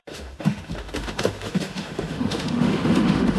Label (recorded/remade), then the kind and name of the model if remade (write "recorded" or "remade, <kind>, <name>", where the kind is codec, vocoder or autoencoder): remade, autoencoder, DAC-VAE